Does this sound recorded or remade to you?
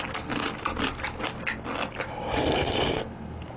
recorded